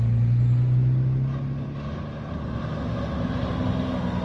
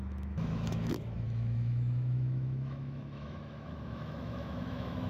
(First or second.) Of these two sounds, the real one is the first